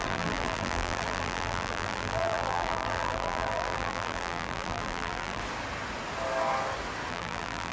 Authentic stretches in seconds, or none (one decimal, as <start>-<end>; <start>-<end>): 5.4-7.1